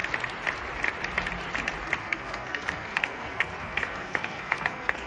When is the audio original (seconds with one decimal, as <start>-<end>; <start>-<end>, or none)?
0.0-2.0